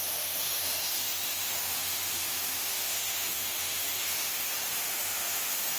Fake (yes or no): yes